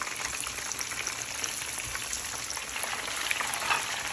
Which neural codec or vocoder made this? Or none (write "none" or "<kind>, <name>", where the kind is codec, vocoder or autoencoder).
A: none